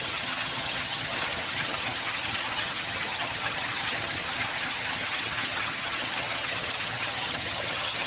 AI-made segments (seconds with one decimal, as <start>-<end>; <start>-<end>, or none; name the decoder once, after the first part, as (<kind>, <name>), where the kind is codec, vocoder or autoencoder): 0.0-8.1 (vocoder, HiFi-GAN)